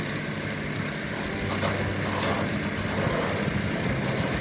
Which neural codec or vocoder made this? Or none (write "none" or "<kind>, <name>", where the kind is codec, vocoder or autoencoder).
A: none